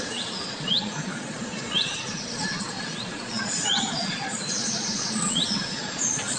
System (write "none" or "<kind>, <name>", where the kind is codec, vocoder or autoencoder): vocoder, Vocos